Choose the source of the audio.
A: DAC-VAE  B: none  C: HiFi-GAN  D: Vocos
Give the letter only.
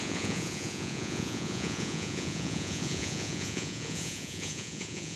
D